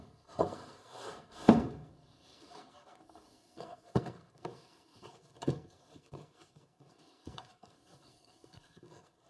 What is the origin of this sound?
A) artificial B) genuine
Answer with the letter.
A